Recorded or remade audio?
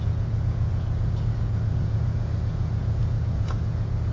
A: remade